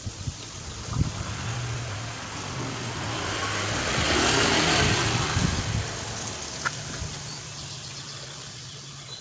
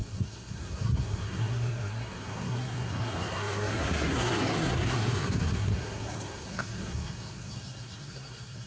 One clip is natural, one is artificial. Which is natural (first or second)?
first